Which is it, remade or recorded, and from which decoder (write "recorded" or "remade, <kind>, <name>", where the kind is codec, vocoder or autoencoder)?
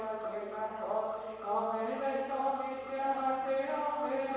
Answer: recorded